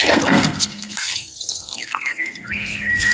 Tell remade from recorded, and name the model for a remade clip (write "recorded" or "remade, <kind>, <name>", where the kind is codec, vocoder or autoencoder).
remade, codec, SNAC